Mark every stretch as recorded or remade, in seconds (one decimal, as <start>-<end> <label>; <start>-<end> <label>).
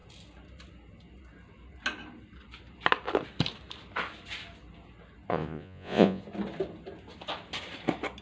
0.0-5.3 recorded; 5.3-6.2 remade; 6.2-8.2 recorded